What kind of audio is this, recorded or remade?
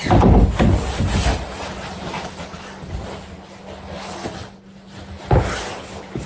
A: recorded